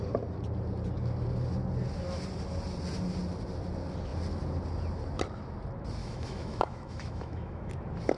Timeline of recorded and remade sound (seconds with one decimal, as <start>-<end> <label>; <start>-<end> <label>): 0.0-6.0 recorded; 6.0-7.7 remade; 7.7-8.2 recorded